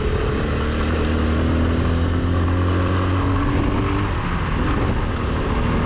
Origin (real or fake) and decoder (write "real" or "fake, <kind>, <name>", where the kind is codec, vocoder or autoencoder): real